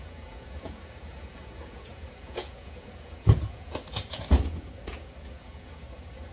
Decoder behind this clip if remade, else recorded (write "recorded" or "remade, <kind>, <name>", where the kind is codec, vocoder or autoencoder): remade, vocoder, Vocos